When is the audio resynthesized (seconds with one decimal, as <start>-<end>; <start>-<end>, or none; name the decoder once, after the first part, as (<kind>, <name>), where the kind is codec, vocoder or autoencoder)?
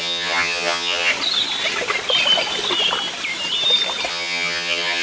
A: 0.0-1.1 (vocoder, HiFi-GAN); 4.1-5.0